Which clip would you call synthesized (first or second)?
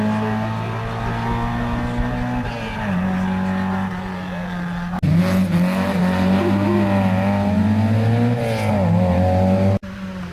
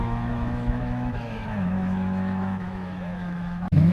second